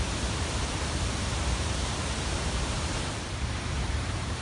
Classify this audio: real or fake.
fake